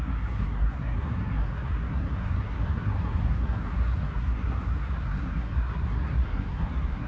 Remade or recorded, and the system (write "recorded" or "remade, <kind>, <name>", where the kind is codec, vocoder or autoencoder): remade, codec, SNAC